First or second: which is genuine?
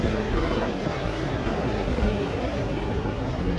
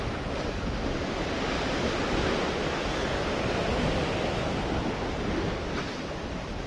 second